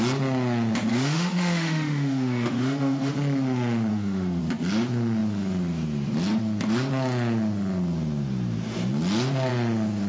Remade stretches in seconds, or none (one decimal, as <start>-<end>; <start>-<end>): 0.9-3.1; 3.9-4.4

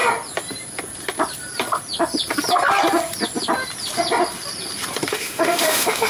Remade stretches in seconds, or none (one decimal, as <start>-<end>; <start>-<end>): 5.1-6.1